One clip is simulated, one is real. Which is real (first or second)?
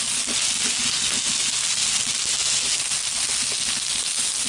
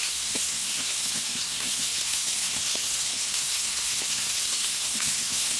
first